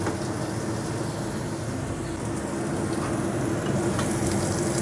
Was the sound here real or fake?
real